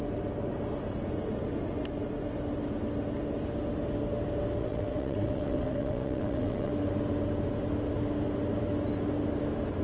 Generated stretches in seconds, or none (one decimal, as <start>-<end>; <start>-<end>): 4.6-6.7